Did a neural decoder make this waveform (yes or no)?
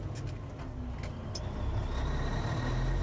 no